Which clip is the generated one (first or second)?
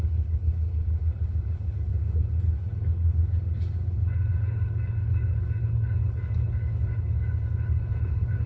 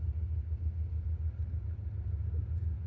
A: first